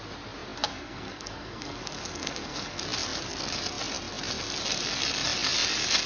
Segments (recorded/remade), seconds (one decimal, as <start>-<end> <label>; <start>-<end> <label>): 0.0-0.7 recorded; 0.7-2.8 remade; 2.8-6.1 recorded